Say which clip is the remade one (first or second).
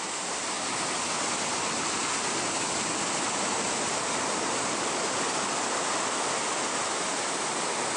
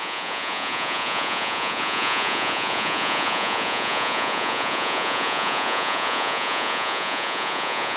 second